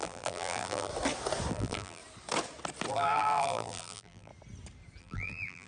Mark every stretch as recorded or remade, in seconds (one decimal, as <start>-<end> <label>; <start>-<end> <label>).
0.0-0.9 remade; 0.9-1.5 recorded; 1.5-2.0 remade; 2.0-2.9 recorded; 2.9-4.3 remade; 4.3-5.0 recorded; 5.0-5.7 remade